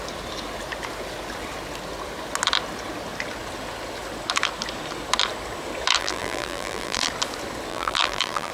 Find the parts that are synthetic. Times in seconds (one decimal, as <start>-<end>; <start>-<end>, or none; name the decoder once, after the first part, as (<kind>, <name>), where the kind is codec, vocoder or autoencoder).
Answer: 6.0-7.1 (vocoder, BigVGAN v2); 7.7-8.5